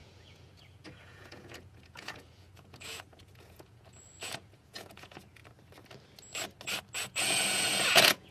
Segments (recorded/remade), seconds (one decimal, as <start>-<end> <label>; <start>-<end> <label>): 0.0-5.4 remade; 5.4-7.0 recorded; 7.0-8.3 remade